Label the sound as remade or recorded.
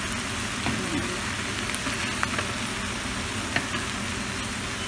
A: recorded